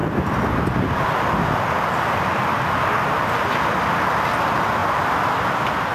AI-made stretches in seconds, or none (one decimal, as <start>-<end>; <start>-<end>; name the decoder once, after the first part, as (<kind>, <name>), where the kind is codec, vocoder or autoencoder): none